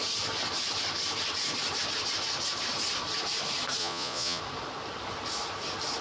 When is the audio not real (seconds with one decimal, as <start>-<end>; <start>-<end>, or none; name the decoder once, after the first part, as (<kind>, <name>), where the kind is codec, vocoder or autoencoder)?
3.8-4.4 (vocoder, Vocos)